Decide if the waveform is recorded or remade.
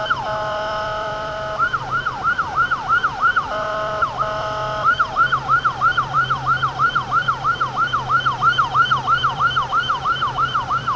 remade